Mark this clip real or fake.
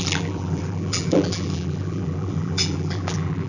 fake